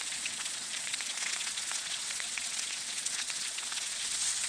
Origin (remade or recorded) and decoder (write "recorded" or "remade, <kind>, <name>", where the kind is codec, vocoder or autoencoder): remade, vocoder, WaveNeXt